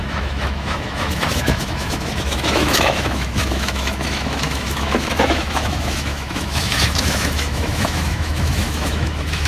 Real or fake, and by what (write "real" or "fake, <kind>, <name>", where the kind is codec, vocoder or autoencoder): fake, autoencoder, DAC-VAE